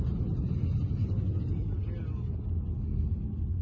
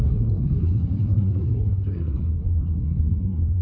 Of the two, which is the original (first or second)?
first